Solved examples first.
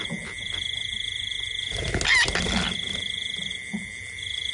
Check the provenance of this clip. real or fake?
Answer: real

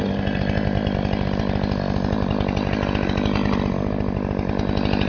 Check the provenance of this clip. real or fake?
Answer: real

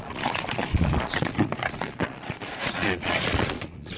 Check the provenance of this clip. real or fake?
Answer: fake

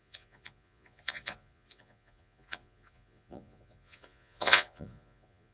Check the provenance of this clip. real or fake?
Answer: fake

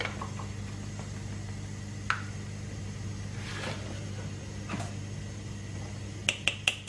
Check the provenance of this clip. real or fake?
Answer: real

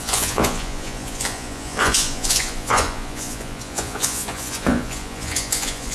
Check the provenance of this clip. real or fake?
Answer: fake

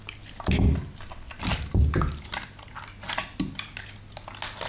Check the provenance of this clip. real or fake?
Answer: real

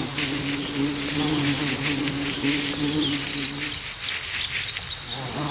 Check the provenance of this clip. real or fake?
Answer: real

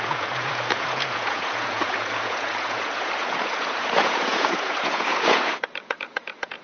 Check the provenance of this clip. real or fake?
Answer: fake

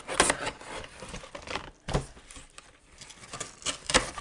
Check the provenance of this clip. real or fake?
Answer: real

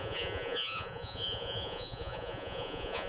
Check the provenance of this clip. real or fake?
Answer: fake